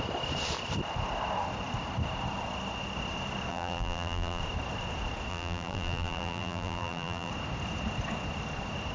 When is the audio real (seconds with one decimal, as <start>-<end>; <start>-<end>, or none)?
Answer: 0.0-3.5; 4.4-5.3; 7.3-8.9